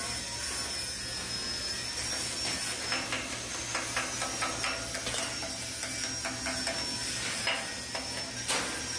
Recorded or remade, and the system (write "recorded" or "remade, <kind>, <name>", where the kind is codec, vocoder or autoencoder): recorded